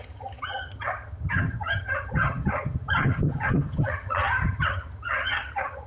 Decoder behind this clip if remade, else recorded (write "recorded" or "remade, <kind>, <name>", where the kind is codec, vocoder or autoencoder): remade, vocoder, HiFi-GAN